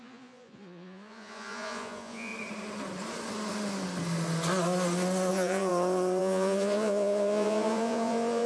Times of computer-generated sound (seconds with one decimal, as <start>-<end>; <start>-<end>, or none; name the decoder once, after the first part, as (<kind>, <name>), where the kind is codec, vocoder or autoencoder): 0.0-2.3 (vocoder, Vocos); 5.3-5.7; 6.2-8.5